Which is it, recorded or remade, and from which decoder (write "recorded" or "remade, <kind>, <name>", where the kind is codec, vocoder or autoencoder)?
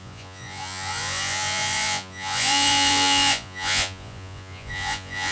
remade, vocoder, Vocos